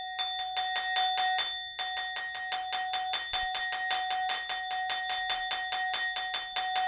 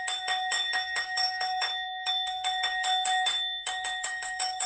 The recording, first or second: first